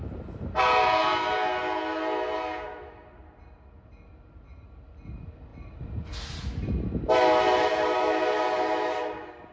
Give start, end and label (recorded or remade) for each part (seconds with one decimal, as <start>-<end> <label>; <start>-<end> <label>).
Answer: 0.0-9.5 recorded